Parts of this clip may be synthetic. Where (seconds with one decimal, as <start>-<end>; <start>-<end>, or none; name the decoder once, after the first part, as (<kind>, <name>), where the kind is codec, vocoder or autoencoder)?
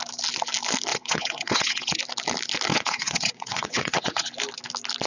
0.9-2.0 (vocoder, WaveNeXt); 2.7-4.3